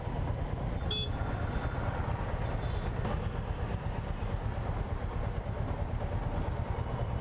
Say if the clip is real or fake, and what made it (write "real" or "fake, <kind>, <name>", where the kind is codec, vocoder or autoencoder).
real